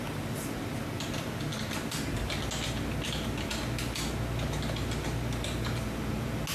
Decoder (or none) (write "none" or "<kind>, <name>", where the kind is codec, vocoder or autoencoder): none